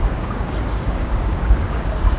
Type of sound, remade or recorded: remade